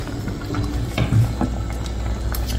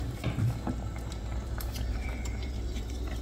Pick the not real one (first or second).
second